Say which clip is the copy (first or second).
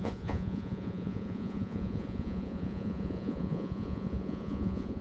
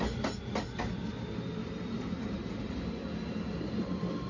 first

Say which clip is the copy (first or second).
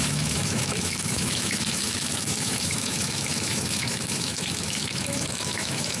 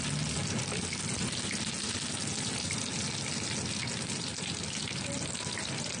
first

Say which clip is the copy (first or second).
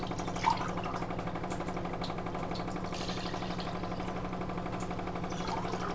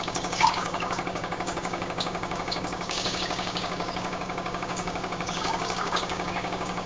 second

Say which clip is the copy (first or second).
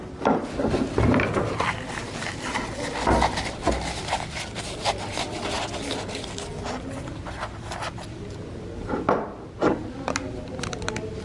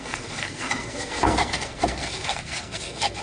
second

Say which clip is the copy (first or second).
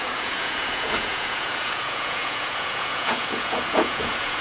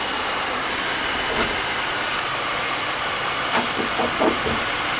first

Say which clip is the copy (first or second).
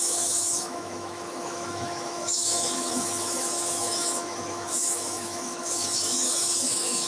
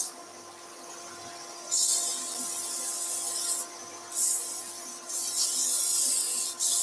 first